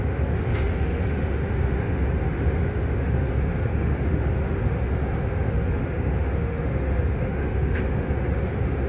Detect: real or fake fake